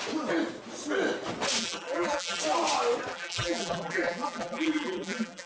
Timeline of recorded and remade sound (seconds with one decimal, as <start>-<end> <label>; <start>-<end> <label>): 0.0-1.6 recorded; 1.6-2.4 remade; 2.4-3.1 recorded; 3.1-5.5 remade